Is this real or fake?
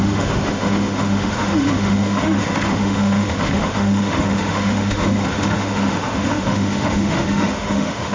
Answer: fake